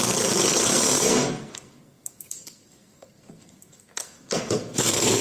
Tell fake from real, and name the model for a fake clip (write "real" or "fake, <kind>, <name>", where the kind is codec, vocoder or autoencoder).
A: fake, codec, SNAC